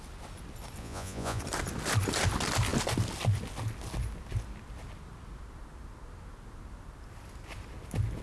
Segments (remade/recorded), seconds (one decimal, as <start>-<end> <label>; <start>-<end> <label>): 0.0-0.8 recorded; 0.8-1.4 remade; 1.4-8.2 recorded